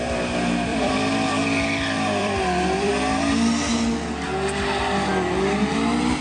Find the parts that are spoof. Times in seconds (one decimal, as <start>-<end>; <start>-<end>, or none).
0.7-1.3; 2.2-2.9